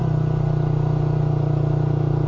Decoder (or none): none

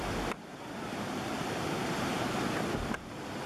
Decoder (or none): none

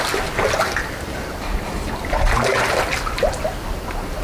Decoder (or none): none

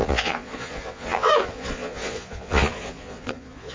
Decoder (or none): vocoder, Vocos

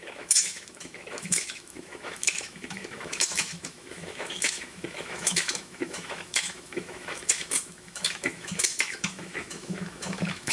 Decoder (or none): autoencoder, DAC-VAE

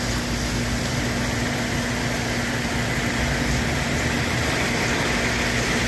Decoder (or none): none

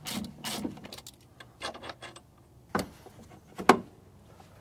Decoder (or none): none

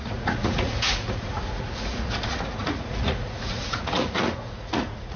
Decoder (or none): vocoder, Vocos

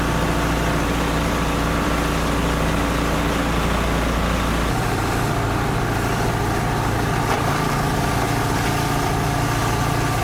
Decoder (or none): none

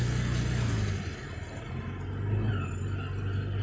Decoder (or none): none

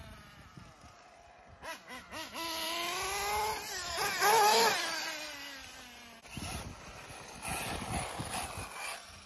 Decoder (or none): none